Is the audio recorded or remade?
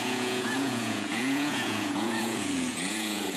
remade